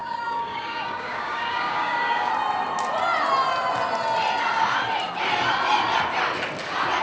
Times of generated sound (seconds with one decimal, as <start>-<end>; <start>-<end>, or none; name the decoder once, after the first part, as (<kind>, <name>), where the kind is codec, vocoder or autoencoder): 0.0-2.3 (codec, DAC)